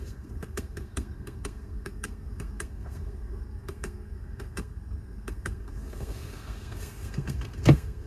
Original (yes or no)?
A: no